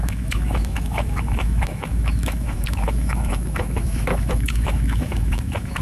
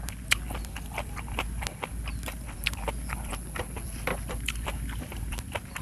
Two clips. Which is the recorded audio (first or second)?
second